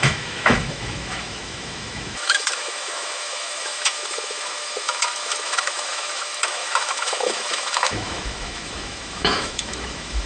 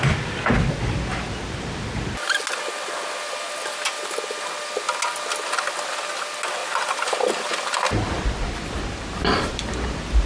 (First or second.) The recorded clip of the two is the second